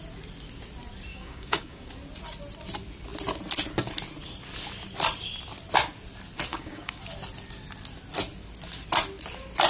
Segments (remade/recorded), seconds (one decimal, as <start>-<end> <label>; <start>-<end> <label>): 0.0-1.1 recorded; 1.1-1.9 remade; 1.9-6.5 recorded; 6.5-7.0 remade; 7.0-9.7 recorded